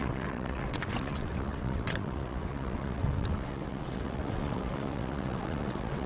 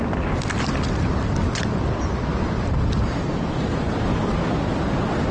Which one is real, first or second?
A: second